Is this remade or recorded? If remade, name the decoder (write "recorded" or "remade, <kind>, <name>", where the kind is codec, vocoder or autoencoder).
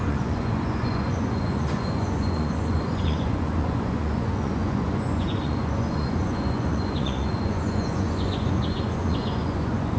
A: remade, vocoder, Vocos